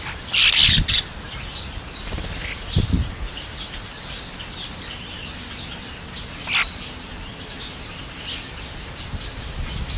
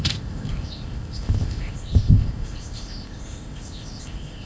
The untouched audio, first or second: first